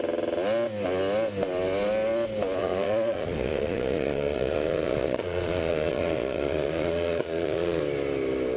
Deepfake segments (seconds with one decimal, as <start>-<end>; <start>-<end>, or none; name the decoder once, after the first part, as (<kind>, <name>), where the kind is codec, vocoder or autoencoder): 2.6-7.8 (vocoder, Vocos)